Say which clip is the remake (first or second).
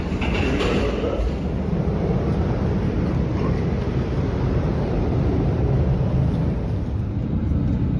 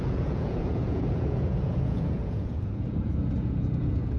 second